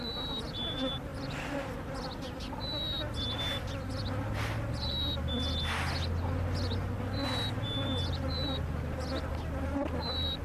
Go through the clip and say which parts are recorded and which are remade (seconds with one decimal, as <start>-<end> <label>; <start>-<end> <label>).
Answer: 0.0-10.4 recorded

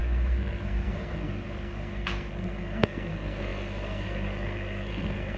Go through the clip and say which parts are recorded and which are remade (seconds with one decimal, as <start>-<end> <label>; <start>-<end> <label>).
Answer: 0.0-5.4 remade

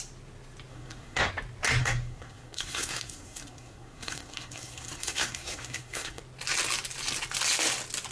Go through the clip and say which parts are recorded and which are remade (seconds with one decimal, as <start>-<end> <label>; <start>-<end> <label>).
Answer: 0.0-0.7 recorded; 0.7-1.3 remade; 1.3-1.8 recorded; 1.8-6.2 remade; 6.2-8.1 recorded

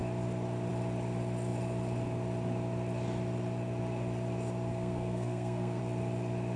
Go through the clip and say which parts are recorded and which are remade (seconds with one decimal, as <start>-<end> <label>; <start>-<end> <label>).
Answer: 0.0-4.7 recorded; 4.7-5.8 remade; 5.8-6.6 recorded

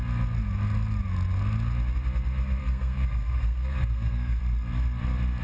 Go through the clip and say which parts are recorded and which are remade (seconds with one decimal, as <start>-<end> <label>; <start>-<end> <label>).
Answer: 0.0-2.6 recorded; 2.6-4.4 remade; 4.4-5.4 recorded

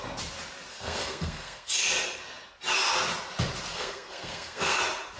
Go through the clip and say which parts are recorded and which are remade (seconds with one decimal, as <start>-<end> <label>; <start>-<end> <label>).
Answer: 0.0-0.7 recorded; 0.7-1.7 remade; 1.7-3.7 recorded; 3.7-4.8 remade; 4.8-5.2 recorded

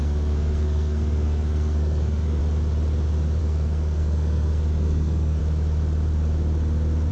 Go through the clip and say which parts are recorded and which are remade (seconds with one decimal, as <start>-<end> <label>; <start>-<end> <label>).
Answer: 0.0-2.4 remade; 2.4-3.4 recorded; 3.4-5.4 remade; 5.4-7.1 recorded